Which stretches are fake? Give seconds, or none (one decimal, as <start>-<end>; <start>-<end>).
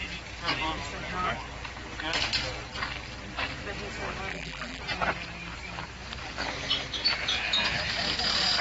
4.3-4.8